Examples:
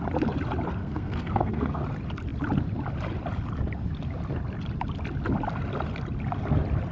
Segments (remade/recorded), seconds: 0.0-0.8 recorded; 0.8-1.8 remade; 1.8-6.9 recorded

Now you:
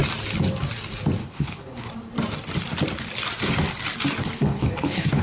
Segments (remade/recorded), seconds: 0.0-1.2 recorded; 1.2-1.9 remade; 1.9-4.2 recorded; 4.2-5.2 remade

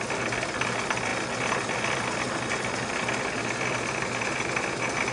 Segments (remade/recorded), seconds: 0.0-5.1 recorded

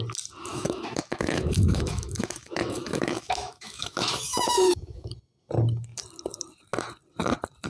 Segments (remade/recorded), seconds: 0.0-0.5 recorded; 0.5-5.1 remade; 5.1-7.7 recorded

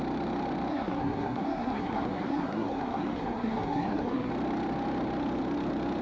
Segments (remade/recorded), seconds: 0.0-0.7 recorded; 0.7-4.3 remade; 4.3-6.0 recorded

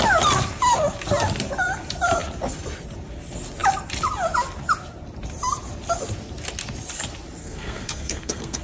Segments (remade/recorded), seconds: 0.0-7.4 recorded; 7.4-8.6 remade

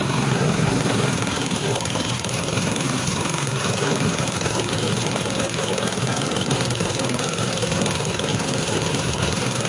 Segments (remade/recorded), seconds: 0.0-9.7 remade

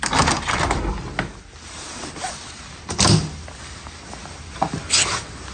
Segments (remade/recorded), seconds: 0.0-5.5 recorded